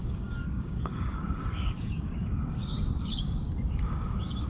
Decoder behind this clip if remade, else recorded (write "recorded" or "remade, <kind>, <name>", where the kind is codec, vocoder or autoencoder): remade, codec, DAC